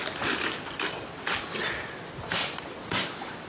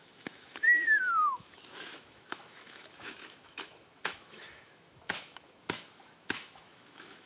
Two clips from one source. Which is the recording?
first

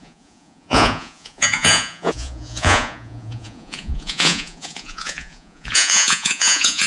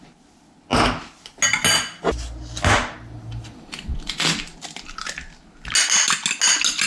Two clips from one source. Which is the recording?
second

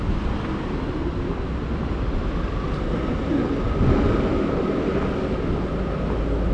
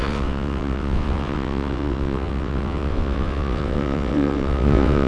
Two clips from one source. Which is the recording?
first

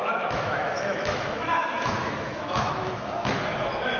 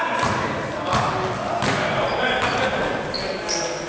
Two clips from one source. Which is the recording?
second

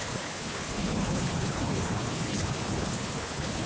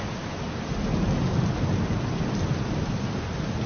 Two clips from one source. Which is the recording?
second